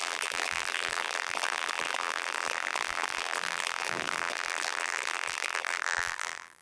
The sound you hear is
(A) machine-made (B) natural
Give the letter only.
A